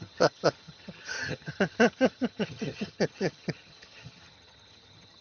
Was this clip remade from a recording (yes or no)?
yes